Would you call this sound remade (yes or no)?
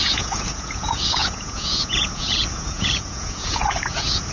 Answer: yes